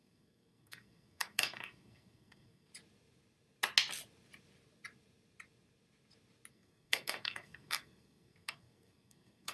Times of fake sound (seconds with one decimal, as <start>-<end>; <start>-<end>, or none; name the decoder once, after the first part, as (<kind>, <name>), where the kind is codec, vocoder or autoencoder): 0.0-2.7 (codec, SNAC); 6.5-9.5

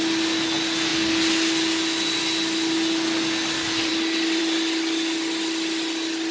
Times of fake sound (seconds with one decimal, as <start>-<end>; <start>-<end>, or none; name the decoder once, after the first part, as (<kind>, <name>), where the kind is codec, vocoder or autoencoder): none